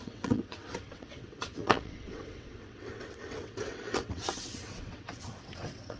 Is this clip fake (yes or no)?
yes